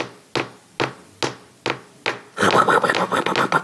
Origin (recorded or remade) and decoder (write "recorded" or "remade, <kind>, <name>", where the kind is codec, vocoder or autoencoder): recorded